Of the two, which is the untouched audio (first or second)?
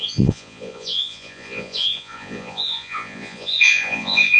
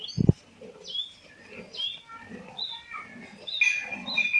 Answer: second